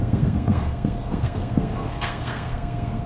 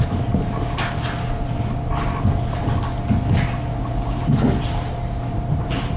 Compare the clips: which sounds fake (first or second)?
first